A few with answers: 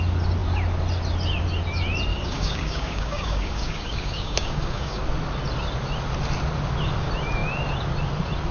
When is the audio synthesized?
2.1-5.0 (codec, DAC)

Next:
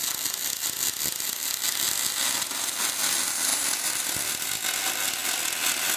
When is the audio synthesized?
none

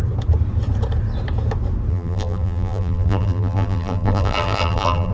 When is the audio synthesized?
1.9-5.1 (vocoder, BigVGAN v2)

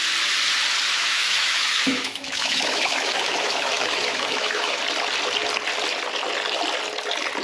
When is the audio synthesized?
0.9-4.8 (autoencoder, DAC-VAE)